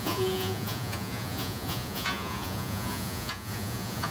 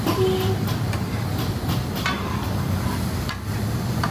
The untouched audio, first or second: second